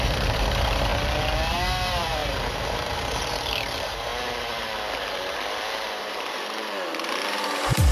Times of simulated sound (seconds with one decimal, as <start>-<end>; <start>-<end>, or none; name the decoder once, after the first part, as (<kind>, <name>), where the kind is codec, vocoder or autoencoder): 0.0-0.9 (vocoder, BigVGAN v2); 1.5-4.1; 6.0-7.9

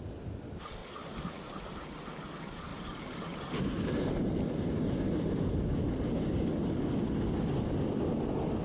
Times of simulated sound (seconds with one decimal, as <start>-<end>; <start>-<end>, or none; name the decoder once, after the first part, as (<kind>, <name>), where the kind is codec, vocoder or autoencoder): 0.8-1.6 (vocoder, BigVGAN v2); 2.7-4.2

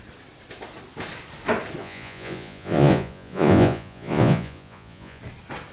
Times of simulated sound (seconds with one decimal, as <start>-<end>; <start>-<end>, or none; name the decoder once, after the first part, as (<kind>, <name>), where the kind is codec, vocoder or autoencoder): 1.8-5.2 (vocoder, Vocos)

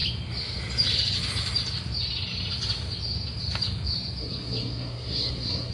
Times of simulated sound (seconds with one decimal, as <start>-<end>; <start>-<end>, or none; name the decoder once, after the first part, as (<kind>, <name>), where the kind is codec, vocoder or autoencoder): 4.2-5.7 (codec, SNAC)